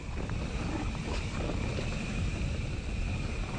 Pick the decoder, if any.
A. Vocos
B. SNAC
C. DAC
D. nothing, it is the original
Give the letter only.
D